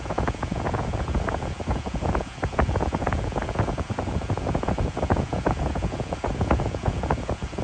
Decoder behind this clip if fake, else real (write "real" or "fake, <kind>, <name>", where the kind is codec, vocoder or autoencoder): fake, vocoder, Vocos